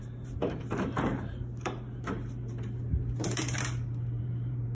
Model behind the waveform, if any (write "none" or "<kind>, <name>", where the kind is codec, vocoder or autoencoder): vocoder, BigVGAN v2